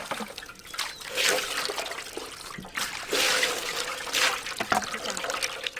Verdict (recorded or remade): recorded